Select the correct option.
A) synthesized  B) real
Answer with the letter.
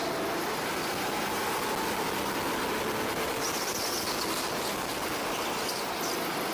B